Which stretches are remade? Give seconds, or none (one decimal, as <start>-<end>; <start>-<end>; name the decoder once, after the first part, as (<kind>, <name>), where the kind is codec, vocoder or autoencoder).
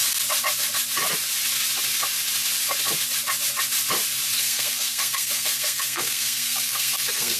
4.4-7.4 (codec, SNAC)